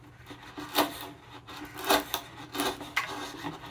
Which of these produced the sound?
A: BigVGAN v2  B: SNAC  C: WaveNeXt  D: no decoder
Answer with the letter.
D